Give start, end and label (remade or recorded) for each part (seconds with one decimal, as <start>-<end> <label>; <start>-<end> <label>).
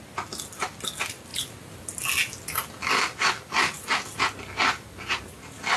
0.0-5.8 recorded